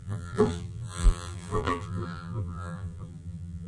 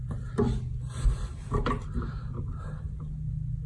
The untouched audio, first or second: second